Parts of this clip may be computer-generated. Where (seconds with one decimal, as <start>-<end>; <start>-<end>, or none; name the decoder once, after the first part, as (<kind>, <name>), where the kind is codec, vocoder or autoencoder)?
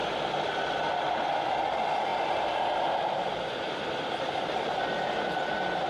0.0-0.7 (vocoder, BigVGAN v2); 2.1-4.6